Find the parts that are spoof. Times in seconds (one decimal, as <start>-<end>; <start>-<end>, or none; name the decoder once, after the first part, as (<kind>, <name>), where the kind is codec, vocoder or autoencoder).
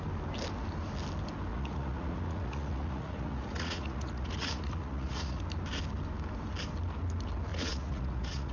1.5-5.4 (vocoder, Vocos); 7.5-8.5